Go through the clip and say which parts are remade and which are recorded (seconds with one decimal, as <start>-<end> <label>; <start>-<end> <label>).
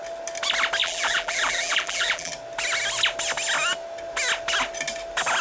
0.0-0.8 recorded; 0.8-2.3 remade; 2.3-5.4 recorded